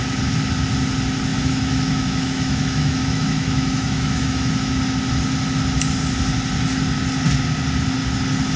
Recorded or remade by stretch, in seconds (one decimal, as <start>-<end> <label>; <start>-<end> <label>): 0.0-1.3 recorded; 1.3-4.8 remade; 4.8-8.6 recorded